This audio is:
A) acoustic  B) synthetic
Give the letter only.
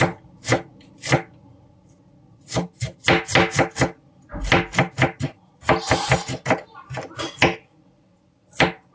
A